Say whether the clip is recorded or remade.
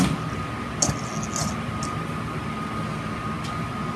recorded